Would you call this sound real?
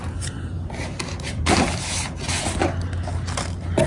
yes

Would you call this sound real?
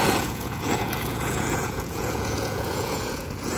no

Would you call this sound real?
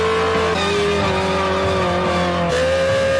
yes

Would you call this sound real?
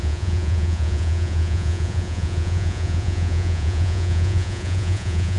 no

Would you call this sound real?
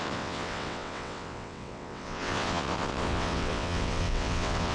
no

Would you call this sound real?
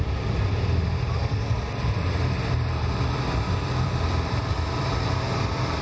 no